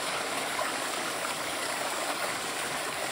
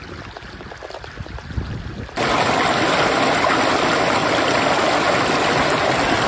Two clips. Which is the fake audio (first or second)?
first